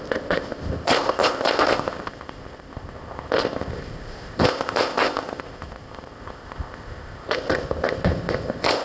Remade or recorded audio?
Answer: remade